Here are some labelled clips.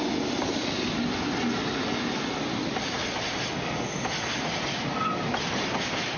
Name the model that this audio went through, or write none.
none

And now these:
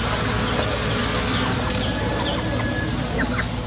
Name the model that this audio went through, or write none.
none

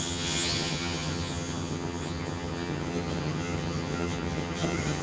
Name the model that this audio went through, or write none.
vocoder, HiFi-GAN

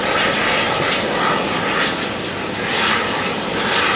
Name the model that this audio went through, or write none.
none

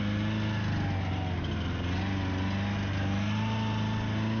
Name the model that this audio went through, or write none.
none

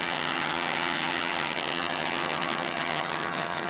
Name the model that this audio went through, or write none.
vocoder, HiFi-GAN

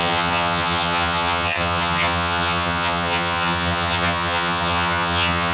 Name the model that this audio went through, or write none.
vocoder, HiFi-GAN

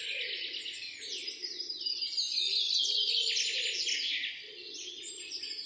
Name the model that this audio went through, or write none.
none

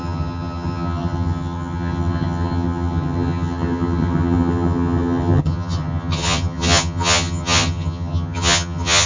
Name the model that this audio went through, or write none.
vocoder, HiFi-GAN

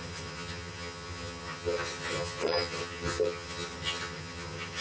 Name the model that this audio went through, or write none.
vocoder, HiFi-GAN